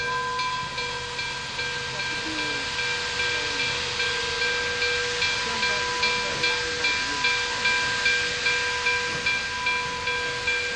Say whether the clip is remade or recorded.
recorded